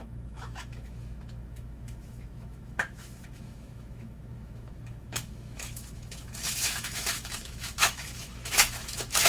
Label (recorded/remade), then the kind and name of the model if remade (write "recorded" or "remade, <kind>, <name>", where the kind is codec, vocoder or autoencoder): remade, autoencoder, DAC-VAE